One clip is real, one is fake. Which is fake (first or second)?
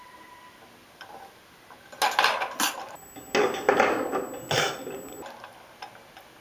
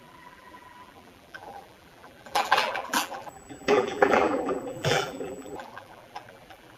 second